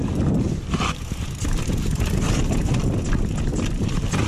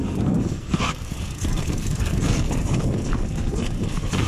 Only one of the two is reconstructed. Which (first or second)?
second